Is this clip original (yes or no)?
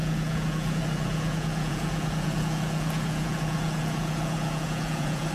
no